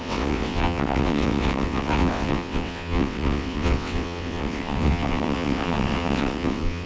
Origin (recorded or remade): remade